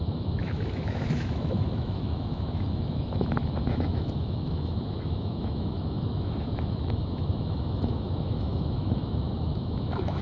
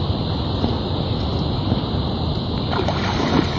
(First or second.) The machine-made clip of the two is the first